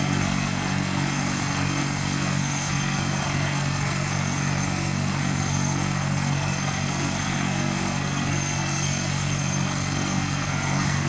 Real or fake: fake